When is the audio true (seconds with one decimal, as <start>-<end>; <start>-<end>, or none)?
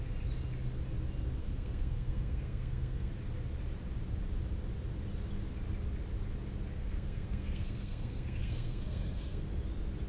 0.0-1.4; 3.1-6.8; 9.4-10.1